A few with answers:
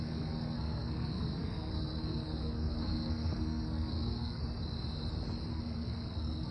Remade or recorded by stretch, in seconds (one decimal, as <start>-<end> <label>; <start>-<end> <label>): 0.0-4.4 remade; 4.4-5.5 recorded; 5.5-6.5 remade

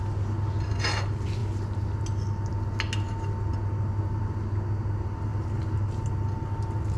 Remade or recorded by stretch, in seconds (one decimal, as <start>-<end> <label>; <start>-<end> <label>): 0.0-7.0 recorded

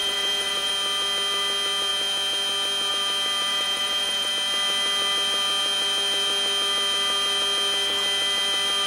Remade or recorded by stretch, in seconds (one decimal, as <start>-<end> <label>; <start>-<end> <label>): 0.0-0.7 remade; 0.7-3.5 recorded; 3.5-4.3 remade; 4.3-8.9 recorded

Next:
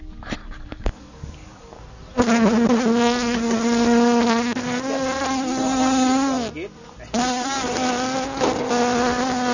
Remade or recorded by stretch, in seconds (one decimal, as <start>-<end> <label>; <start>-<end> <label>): 0.0-0.4 recorded; 0.4-1.8 remade; 1.8-9.5 recorded

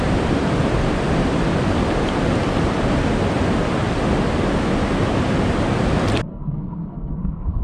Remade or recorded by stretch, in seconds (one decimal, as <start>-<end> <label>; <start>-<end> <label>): 0.0-6.3 recorded; 6.3-7.6 remade

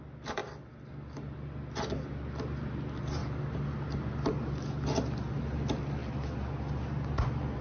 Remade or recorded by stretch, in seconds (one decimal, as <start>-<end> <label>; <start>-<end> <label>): 0.0-7.6 recorded